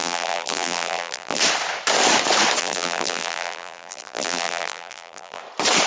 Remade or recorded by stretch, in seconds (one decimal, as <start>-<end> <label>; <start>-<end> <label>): 0.0-1.4 remade; 1.4-2.6 recorded; 2.6-5.4 remade; 5.4-5.9 recorded